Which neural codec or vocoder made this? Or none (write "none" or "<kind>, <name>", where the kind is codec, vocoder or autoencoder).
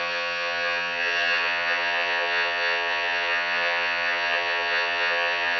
vocoder, HiFi-GAN